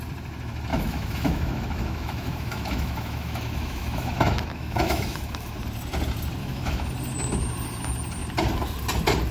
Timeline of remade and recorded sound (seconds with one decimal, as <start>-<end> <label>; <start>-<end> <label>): 0.0-0.7 recorded; 0.7-5.6 remade; 5.6-6.4 recorded; 6.4-6.9 remade; 6.9-9.3 recorded